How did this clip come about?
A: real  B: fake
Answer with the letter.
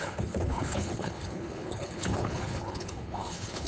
B